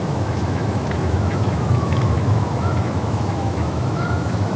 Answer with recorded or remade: remade